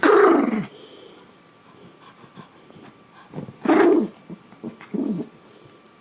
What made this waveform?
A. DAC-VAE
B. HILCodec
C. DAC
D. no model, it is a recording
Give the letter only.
D